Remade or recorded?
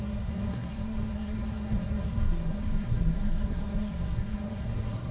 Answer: remade